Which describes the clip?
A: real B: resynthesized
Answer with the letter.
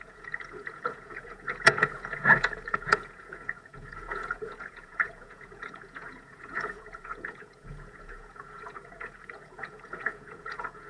B